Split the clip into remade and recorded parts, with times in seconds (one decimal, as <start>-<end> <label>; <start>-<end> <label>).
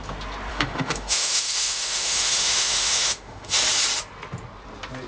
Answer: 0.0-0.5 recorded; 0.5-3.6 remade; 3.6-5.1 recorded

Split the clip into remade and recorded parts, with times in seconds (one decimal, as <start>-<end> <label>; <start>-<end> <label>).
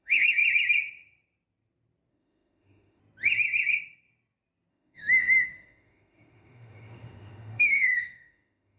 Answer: 0.0-0.4 remade; 0.4-2.1 recorded; 2.1-3.0 remade; 3.0-4.7 recorded; 4.7-8.8 remade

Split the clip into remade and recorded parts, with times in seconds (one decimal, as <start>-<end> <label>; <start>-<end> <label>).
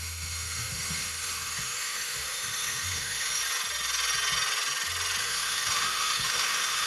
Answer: 0.0-3.4 remade; 3.4-5.2 recorded; 5.2-6.9 remade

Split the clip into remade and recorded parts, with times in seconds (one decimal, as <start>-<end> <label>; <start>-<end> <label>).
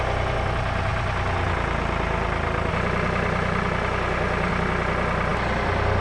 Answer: 0.0-6.0 recorded